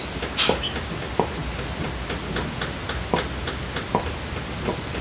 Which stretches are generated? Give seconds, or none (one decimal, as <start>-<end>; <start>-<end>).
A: none